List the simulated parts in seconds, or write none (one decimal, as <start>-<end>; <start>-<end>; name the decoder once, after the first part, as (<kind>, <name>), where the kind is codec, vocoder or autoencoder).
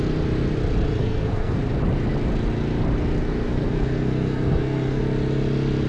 1.0-1.6 (codec, SNAC); 3.2-5.0